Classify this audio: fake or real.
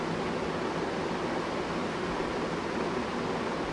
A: real